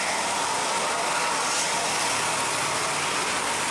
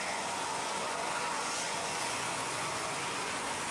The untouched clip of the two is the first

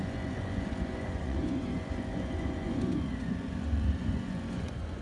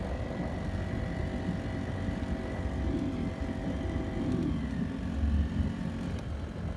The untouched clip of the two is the second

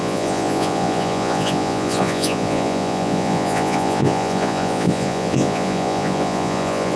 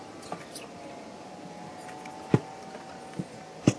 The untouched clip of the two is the second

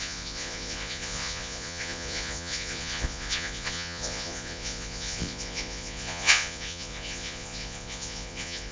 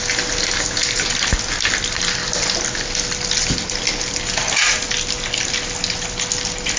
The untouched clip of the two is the second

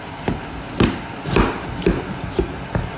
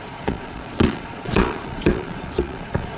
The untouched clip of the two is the first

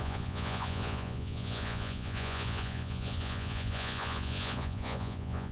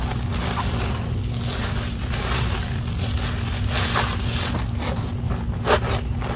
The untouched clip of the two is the second